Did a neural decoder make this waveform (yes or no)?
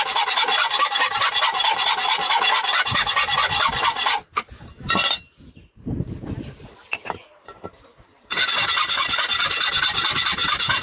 no